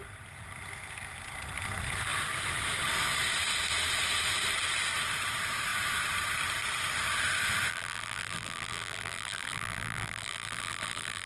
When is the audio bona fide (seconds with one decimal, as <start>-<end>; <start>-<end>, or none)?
0.0-7.7

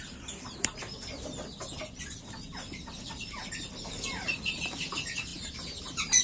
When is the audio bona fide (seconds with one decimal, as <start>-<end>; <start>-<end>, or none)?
0.0-6.2

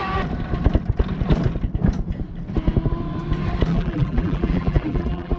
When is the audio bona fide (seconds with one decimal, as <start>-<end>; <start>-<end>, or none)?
0.0-3.7

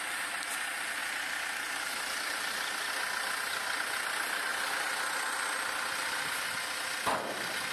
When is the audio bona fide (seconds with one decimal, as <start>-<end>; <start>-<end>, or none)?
0.0-1.0; 2.9-7.7